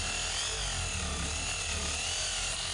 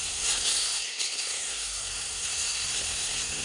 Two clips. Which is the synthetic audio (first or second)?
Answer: second